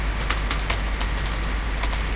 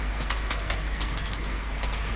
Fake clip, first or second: second